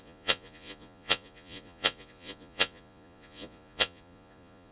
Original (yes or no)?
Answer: no